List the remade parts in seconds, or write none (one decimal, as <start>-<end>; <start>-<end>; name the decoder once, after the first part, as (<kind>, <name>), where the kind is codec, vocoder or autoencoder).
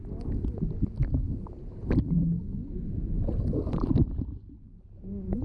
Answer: none